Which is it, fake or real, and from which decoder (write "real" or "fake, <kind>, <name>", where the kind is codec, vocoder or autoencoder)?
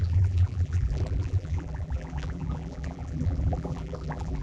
fake, vocoder, BigVGAN v2